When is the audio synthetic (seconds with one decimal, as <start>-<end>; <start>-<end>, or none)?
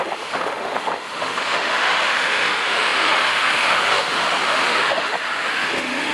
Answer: 0.0-6.1